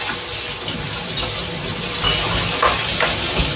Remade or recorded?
recorded